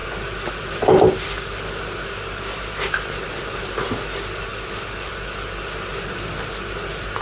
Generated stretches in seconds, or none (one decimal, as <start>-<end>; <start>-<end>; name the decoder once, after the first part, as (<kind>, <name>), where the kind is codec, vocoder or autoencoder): none